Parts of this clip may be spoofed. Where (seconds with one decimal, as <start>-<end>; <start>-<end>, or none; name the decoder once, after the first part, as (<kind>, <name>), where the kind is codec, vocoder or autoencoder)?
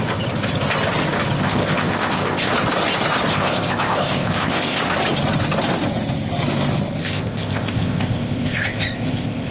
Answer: 1.4-2.5 (codec, ZipCodec); 3.3-4.8; 7.0-9.5